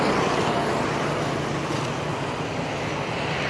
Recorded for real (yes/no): yes